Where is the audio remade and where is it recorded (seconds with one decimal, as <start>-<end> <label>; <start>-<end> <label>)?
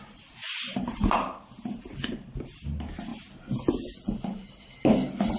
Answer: 0.0-0.4 recorded; 0.4-2.6 remade; 2.6-5.4 recorded